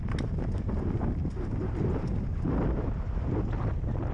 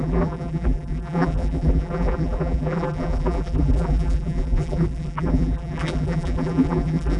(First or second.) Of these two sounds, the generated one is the second